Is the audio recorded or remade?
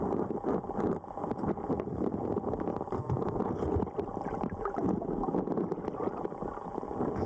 recorded